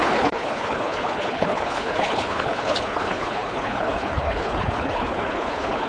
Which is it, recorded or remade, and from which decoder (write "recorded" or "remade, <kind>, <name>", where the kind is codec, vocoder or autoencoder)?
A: remade, codec, HILCodec